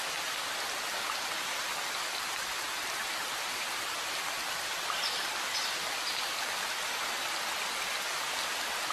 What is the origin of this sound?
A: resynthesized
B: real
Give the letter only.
B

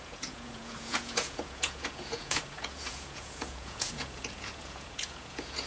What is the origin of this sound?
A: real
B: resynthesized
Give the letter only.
B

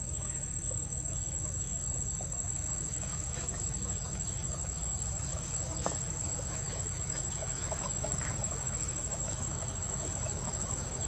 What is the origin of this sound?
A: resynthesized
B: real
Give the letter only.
A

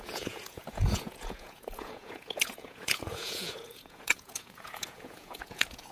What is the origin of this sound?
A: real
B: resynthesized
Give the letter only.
B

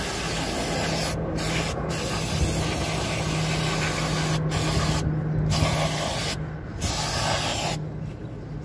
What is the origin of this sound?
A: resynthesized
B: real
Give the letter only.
B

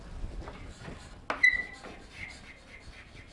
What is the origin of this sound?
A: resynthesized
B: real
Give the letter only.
B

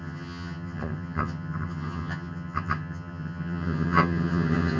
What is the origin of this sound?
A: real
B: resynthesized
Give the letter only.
B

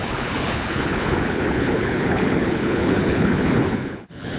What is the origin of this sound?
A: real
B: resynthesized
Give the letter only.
B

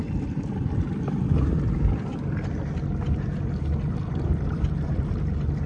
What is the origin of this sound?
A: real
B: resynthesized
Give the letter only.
A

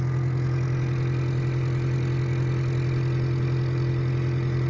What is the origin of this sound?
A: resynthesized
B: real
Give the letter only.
B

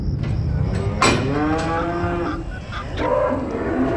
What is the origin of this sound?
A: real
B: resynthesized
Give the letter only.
A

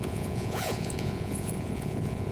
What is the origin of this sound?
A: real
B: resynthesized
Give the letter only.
B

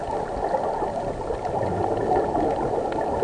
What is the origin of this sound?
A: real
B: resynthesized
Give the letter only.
A